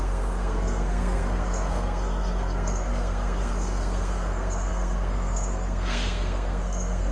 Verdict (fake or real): fake